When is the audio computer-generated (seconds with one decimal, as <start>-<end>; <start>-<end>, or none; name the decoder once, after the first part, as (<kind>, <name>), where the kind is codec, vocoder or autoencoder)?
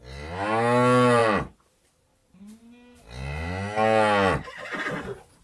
none